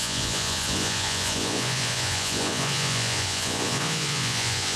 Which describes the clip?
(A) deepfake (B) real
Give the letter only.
A